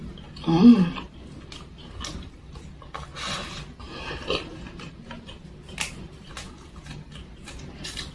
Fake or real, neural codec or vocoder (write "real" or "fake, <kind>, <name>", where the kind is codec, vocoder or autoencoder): real